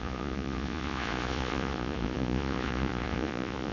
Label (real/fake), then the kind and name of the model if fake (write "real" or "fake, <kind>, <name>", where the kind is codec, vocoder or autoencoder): fake, vocoder, Vocos